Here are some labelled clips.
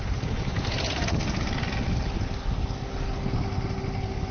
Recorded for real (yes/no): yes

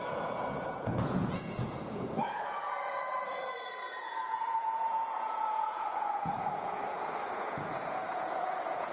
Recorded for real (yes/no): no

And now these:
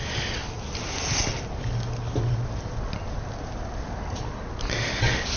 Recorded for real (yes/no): yes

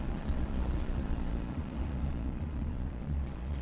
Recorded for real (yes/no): no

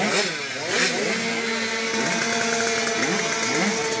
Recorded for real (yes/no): yes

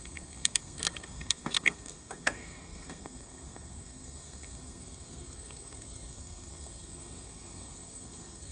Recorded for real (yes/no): no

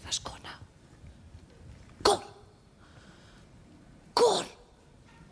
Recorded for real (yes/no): no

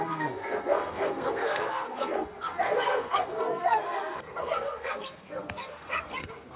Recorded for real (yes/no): no